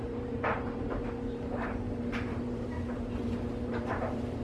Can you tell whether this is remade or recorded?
remade